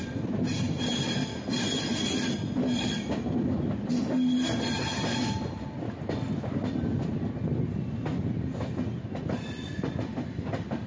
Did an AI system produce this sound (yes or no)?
no